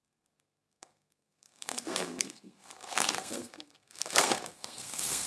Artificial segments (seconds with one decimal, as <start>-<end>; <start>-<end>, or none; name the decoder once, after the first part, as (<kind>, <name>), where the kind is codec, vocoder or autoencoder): 0.0-5.3 (codec, SNAC)